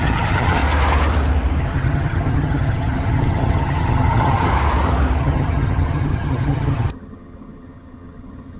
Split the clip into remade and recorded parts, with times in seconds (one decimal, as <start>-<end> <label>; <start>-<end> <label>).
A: 0.0-0.6 remade; 0.6-1.6 recorded; 1.6-4.5 remade; 4.5-5.2 recorded; 5.2-8.6 remade

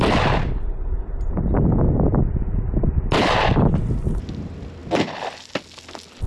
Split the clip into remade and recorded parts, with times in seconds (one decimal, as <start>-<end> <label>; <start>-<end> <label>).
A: 0.0-6.3 recorded

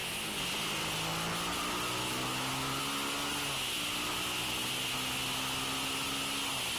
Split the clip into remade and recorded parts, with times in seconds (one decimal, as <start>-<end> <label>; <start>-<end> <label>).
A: 0.0-6.8 recorded

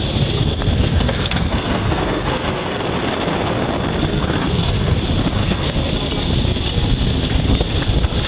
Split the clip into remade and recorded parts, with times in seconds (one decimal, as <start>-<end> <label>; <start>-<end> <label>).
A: 0.0-0.4 recorded; 0.4-2.8 remade; 2.8-4.1 recorded; 4.1-5.0 remade; 5.0-5.4 recorded; 5.4-5.9 remade; 5.9-8.3 recorded

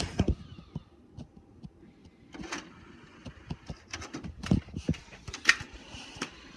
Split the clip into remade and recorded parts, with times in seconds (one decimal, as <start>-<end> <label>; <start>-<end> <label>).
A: 0.0-0.5 recorded; 0.5-1.1 remade; 1.1-2.0 recorded; 2.0-2.8 remade; 2.8-3.2 recorded; 3.2-6.6 remade